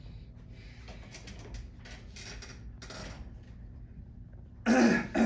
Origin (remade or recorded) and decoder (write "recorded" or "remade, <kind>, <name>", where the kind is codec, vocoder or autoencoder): recorded